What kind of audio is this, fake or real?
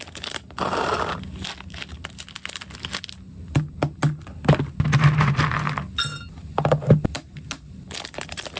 real